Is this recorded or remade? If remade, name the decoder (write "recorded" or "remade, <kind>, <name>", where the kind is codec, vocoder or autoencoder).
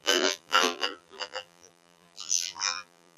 remade, vocoder, BigVGAN v2